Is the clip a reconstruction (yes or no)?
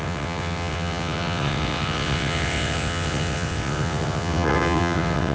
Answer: yes